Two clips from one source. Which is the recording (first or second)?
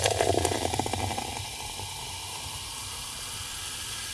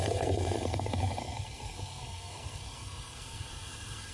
first